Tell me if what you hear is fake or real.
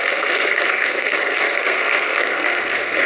fake